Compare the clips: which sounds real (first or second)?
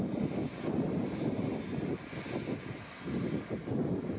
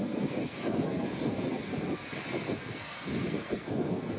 first